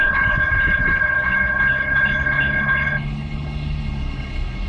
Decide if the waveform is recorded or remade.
remade